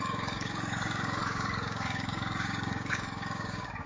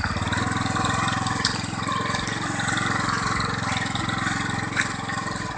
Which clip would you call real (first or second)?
second